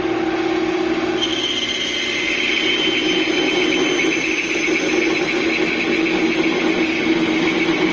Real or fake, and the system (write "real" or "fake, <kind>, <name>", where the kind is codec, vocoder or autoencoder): real